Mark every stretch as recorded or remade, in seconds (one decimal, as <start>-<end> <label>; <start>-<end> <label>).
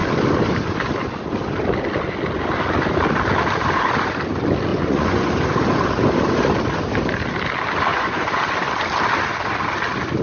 0.0-4.7 recorded; 4.7-5.3 remade; 5.3-7.9 recorded; 7.9-8.4 remade; 8.4-10.2 recorded